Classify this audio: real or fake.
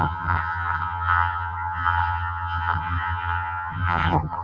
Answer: fake